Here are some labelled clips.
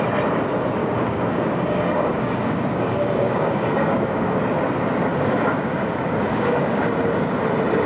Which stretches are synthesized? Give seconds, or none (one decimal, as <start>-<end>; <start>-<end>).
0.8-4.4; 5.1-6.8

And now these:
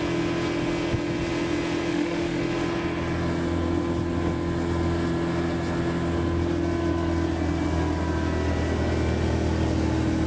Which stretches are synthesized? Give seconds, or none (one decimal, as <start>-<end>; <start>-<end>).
1.9-2.4

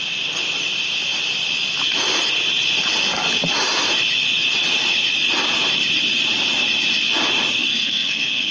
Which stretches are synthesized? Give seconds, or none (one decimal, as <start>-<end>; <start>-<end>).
7.6-8.5

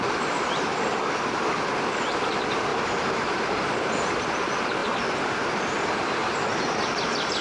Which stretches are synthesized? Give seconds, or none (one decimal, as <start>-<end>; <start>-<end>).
2.7-4.3; 4.8-5.4; 6.2-6.8

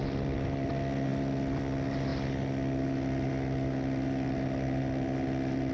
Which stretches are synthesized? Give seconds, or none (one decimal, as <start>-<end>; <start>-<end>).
none

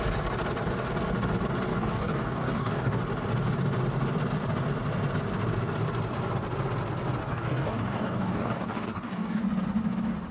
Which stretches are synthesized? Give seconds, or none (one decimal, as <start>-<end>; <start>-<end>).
1.7-3.0; 7.2-9.4

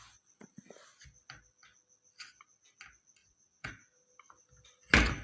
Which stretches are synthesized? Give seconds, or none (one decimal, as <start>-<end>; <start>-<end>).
3.2-3.7

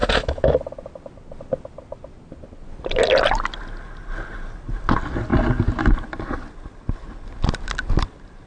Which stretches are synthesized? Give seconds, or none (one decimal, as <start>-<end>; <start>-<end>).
0.0-0.5